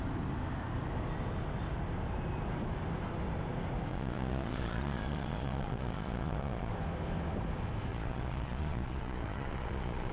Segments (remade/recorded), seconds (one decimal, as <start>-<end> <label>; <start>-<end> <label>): 0.0-3.9 recorded; 3.9-6.7 remade; 6.7-7.9 recorded; 7.9-10.1 remade